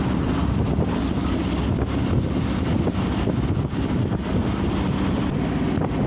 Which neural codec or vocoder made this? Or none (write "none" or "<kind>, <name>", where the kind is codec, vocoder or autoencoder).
none